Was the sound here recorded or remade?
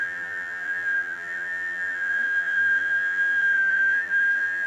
remade